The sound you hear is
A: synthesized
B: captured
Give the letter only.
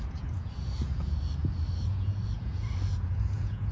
A